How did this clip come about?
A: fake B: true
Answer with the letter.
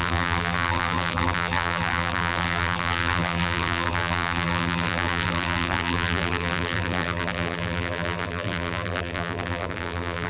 A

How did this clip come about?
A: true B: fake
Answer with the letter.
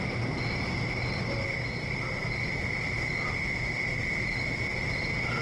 A